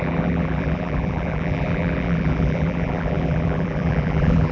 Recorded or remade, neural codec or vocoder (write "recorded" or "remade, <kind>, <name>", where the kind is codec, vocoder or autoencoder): remade, vocoder, BigVGAN v2